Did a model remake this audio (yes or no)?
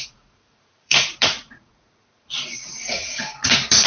yes